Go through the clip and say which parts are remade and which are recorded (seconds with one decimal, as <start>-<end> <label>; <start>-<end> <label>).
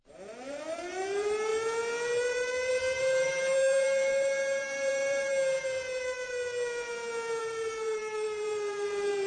0.0-1.5 remade; 1.5-2.7 recorded; 2.7-5.3 remade; 5.3-7.4 recorded; 7.4-9.3 remade